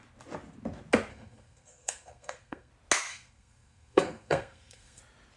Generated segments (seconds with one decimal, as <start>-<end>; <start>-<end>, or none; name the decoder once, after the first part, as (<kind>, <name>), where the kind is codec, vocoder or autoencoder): 1.1-2.7 (codec, SNAC); 3.1-5.0